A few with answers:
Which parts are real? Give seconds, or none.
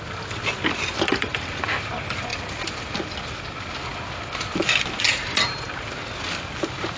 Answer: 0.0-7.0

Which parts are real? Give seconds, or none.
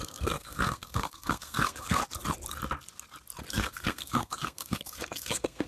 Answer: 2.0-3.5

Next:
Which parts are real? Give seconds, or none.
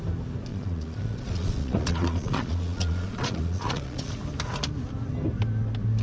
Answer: 0.0-0.5; 4.1-6.0